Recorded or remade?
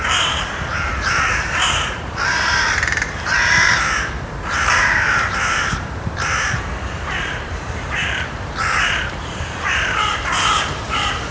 remade